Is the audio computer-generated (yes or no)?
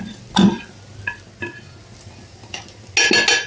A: no